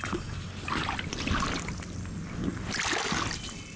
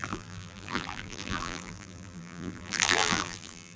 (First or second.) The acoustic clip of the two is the first